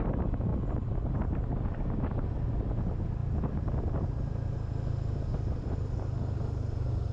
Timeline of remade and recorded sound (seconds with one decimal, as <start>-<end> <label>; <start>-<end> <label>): 0.0-7.1 recorded